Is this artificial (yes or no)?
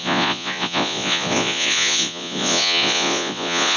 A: yes